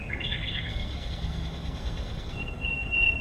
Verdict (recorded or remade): remade